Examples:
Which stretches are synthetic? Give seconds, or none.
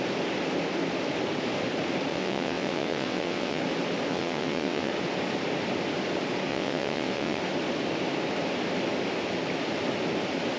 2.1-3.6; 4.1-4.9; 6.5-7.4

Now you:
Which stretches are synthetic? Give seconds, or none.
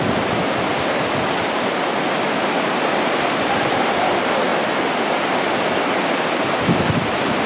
none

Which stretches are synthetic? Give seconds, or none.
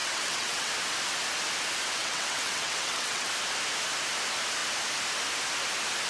0.0-0.7; 2.0-3.3